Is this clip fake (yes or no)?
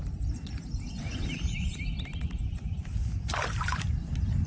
no